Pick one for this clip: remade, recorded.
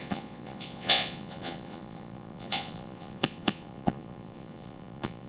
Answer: remade